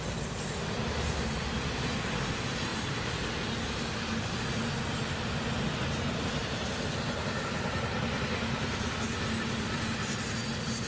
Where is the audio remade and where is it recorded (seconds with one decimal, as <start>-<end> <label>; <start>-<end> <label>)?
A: 0.0-2.7 recorded; 2.7-4.2 remade; 4.2-10.9 recorded

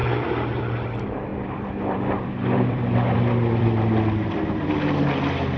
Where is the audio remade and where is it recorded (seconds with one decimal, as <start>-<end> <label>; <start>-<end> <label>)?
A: 0.0-1.3 recorded; 1.3-4.7 remade; 4.7-5.6 recorded